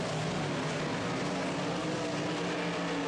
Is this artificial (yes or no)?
no